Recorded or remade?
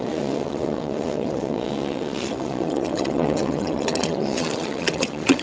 remade